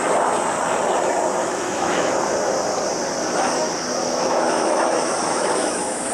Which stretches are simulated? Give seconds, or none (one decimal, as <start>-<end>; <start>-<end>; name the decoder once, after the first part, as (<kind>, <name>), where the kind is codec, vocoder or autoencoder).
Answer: 1.4-2.1 (autoencoder, DAC-VAE); 4.0-6.1